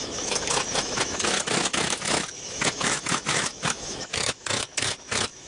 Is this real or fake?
fake